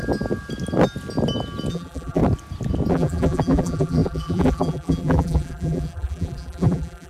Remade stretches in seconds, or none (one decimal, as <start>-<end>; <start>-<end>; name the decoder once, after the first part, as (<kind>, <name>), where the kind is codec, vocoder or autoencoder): 1.7-2.2 (vocoder, BigVGAN v2); 2.9-7.1

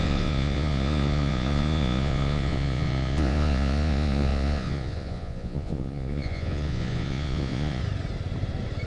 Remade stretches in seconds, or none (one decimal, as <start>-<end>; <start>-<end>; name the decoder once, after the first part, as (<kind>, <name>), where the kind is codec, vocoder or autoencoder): 0.0-7.8 (vocoder, Vocos)

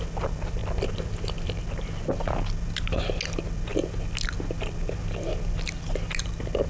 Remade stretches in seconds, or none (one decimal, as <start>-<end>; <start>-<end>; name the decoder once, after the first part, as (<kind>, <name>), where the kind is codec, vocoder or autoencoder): none

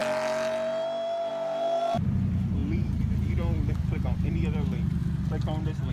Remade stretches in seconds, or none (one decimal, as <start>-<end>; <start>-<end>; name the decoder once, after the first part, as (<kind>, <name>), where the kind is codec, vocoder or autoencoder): 1.3-5.0 (vocoder, BigVGAN v2)

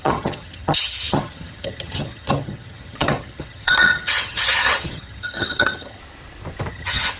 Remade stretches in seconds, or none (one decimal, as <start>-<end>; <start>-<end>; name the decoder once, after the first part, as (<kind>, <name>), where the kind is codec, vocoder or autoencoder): 0.0-6.0 (vocoder, HiFi-GAN); 6.7-7.2

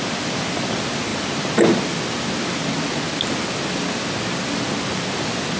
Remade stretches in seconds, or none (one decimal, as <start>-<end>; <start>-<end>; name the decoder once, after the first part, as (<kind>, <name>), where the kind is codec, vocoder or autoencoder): none